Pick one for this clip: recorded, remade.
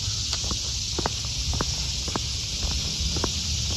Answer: recorded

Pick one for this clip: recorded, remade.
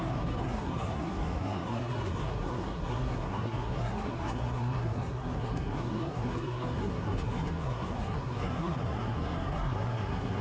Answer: remade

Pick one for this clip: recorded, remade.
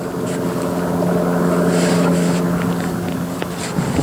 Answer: recorded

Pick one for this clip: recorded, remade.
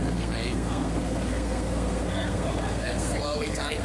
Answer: remade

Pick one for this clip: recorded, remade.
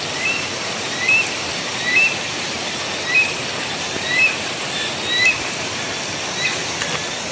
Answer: recorded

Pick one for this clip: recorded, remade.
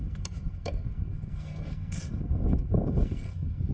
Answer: remade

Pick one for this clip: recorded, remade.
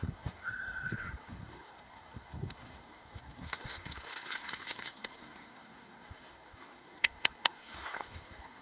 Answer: remade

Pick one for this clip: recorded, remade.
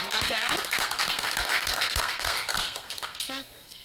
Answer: remade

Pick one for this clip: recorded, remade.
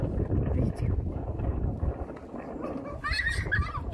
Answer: recorded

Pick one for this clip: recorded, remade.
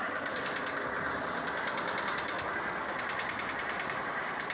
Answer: recorded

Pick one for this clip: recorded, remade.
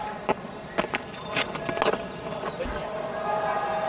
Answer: recorded